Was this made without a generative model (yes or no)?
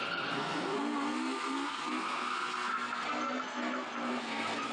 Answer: no